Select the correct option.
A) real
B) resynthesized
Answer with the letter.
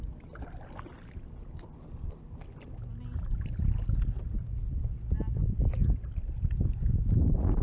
A